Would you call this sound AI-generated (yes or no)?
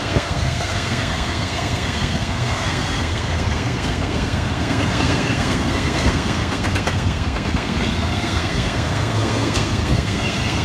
yes